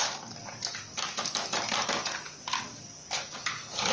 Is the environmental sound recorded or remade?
recorded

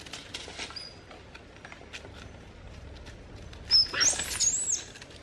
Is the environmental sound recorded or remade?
recorded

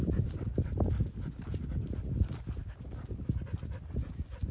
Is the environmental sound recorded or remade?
recorded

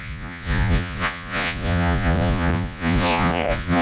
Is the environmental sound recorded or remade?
remade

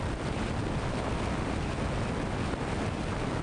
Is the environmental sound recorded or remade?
recorded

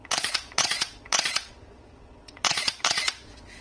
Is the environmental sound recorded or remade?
remade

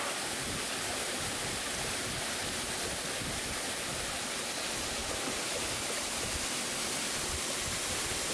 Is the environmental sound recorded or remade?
recorded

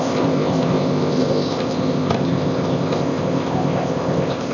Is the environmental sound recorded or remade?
remade